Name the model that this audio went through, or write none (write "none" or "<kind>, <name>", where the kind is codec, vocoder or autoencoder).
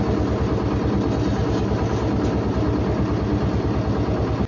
none